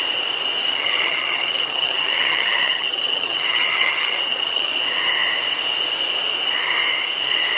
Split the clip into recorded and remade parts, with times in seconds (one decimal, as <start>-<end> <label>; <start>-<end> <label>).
0.0-0.7 recorded; 0.7-4.7 remade; 4.7-7.6 recorded